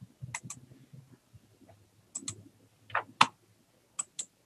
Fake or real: real